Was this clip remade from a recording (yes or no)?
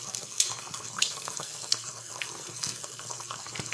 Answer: yes